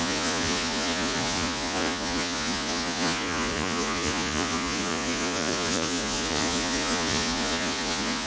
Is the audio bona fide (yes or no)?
no